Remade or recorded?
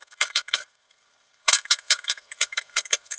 remade